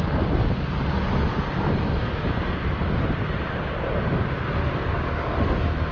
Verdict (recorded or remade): recorded